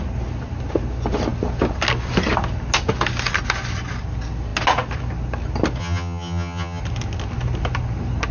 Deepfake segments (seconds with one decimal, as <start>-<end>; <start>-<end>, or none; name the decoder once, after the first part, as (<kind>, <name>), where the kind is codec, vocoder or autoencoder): 5.8-6.8 (vocoder, HiFi-GAN)